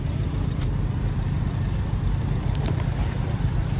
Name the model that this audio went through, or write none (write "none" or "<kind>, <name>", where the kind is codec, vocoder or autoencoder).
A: vocoder, BigVGAN v2